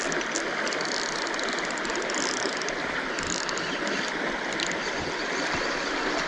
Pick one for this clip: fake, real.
real